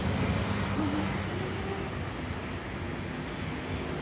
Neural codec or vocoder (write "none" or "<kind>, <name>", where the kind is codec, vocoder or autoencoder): none